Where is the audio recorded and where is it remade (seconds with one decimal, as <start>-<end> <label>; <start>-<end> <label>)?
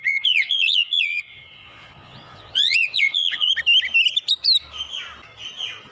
0.0-3.5 remade; 3.5-5.9 recorded